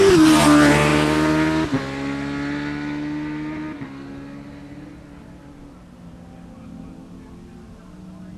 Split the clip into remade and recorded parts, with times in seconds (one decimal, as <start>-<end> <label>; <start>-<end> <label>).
0.0-8.4 recorded